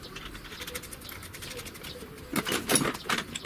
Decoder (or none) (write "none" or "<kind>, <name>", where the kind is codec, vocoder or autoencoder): none